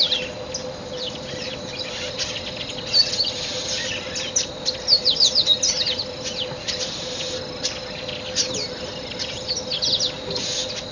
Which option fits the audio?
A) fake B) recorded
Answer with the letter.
B